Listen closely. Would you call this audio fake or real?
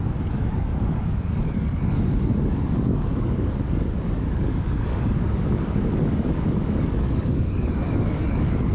fake